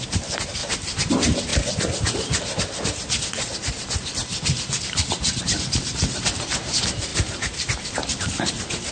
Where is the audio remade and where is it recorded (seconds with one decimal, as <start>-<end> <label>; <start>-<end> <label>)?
0.0-0.6 remade; 0.6-1.1 recorded; 1.1-1.5 remade; 1.5-5.4 recorded; 5.4-7.1 remade; 7.1-8.9 recorded